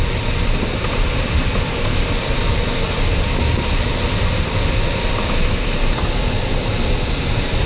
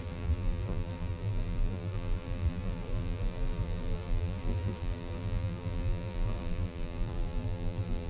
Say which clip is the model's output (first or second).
second